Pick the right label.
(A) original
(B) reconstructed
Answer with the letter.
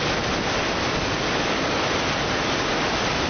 A